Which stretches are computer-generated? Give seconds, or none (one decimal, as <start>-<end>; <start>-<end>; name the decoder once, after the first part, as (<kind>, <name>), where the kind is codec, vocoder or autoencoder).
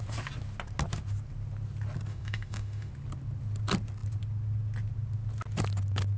2.1-2.9 (autoencoder, DAC-VAE)